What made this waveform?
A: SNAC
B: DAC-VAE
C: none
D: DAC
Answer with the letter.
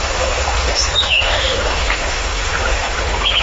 B